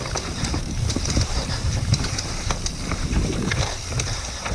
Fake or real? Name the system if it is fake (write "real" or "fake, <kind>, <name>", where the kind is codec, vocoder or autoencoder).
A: fake, vocoder, BigVGAN v2